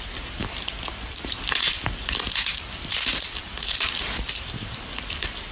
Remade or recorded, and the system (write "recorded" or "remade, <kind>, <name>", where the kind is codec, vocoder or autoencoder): remade, vocoder, BigVGAN v2